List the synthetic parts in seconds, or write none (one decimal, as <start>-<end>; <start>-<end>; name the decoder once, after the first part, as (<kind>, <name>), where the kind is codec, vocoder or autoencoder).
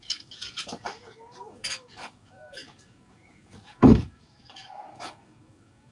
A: 0.0-5.9 (codec, DAC)